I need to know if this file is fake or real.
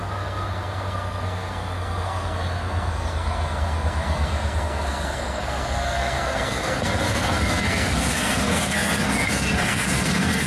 fake